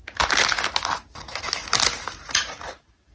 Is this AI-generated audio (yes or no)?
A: no